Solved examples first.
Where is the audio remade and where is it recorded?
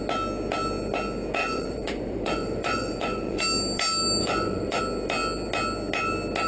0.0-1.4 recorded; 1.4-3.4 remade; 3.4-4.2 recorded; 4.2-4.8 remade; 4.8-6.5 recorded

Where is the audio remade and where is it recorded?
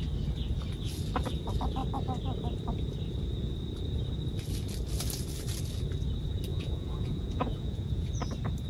0.0-6.5 recorded; 6.5-8.1 remade; 8.1-8.7 recorded